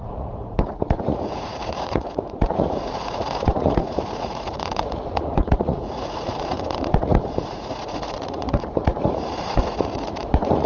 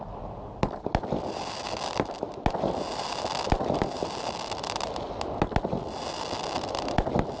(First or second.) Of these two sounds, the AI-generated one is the first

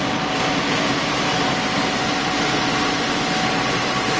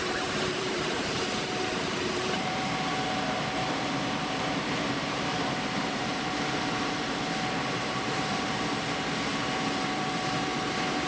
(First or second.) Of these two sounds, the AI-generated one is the second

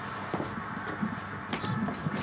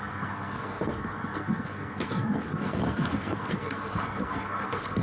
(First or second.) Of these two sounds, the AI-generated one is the second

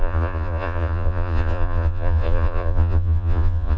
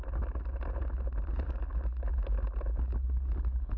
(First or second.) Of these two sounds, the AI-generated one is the first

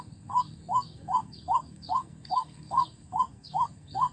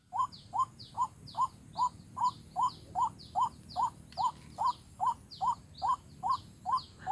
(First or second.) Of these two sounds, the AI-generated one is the first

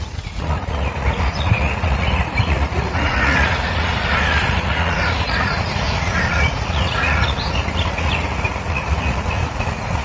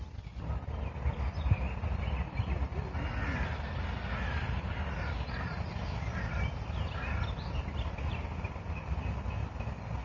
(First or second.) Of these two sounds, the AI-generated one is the first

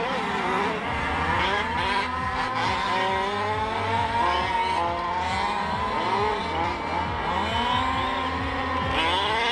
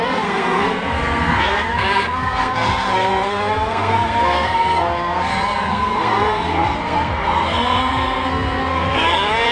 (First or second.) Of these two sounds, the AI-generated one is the second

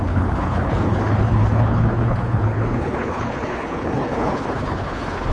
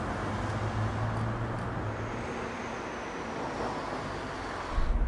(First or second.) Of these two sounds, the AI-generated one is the first